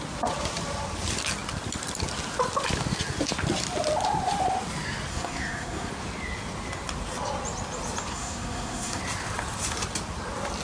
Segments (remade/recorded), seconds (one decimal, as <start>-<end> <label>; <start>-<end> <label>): 0.0-5.1 recorded; 5.1-5.9 remade; 5.9-8.1 recorded; 8.1-9.0 remade; 9.0-10.6 recorded